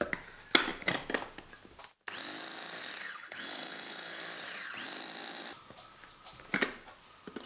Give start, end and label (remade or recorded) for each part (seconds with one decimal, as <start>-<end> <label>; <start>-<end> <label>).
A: 0.0-3.0 recorded; 3.0-4.2 remade; 4.2-7.5 recorded